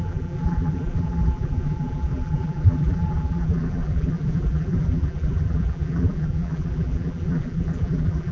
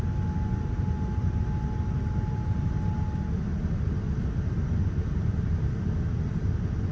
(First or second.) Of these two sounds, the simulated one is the first